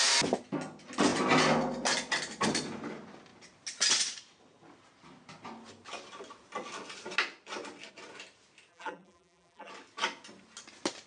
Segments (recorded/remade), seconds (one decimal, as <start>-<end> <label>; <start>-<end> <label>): 0.0-8.7 recorded; 8.7-9.7 remade; 9.7-11.1 recorded